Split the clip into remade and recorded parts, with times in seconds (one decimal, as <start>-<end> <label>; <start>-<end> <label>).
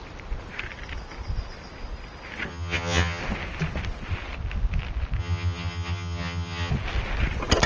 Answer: 0.0-2.5 recorded; 2.5-3.2 remade; 3.2-5.2 recorded; 5.2-6.7 remade; 6.7-7.7 recorded